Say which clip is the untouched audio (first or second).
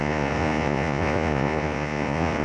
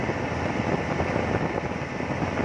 second